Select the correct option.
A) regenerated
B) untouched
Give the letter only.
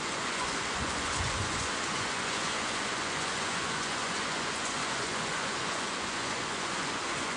A